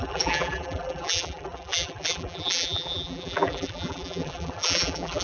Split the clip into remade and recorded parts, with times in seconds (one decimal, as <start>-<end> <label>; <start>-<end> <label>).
0.0-5.2 remade